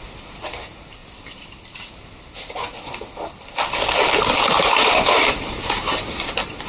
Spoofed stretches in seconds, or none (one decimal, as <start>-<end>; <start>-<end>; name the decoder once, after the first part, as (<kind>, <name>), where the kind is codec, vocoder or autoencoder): 0.0-1.0 (vocoder, BigVGAN v2); 4.7-6.7